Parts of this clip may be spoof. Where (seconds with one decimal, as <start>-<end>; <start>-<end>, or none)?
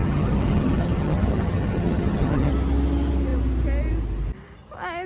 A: 0.0-2.5